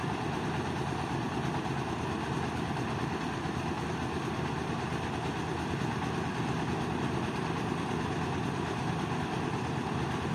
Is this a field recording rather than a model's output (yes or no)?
yes